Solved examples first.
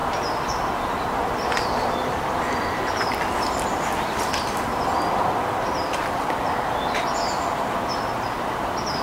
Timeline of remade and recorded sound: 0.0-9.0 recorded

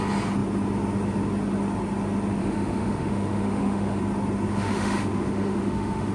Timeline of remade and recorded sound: 0.0-2.4 recorded; 2.4-4.0 remade; 4.0-4.5 recorded; 4.5-6.1 remade

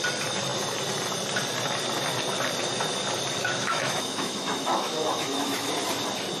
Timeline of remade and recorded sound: 0.0-3.4 recorded; 3.4-5.7 remade; 5.7-6.4 recorded

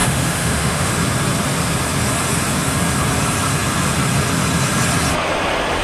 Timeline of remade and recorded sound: 0.0-0.9 remade; 0.9-5.8 recorded

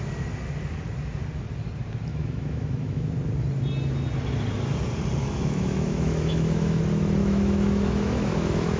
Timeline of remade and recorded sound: 0.0-2.1 recorded; 2.1-3.1 remade; 3.1-5.2 recorded; 5.2-6.8 remade; 6.8-7.2 recorded; 7.2-8.8 remade

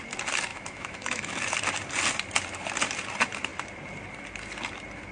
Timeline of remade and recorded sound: 0.0-0.5 recorded; 0.5-1.3 remade; 1.3-5.1 recorded

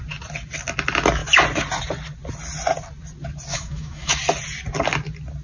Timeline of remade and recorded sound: 0.0-3.5 recorded; 3.5-4.1 remade; 4.1-5.4 recorded

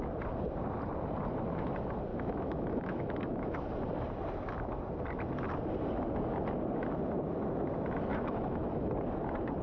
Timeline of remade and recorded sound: 0.0-2.1 recorded; 2.1-3.7 remade; 3.7-8.1 recorded; 8.1-8.9 remade; 8.9-9.6 recorded